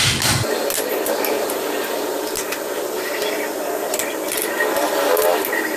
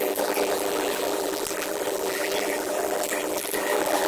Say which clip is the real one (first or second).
first